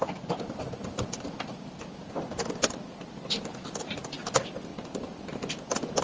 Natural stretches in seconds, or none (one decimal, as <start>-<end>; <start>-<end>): 0.0-6.0